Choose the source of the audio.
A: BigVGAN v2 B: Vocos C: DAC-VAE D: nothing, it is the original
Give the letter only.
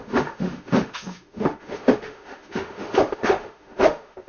C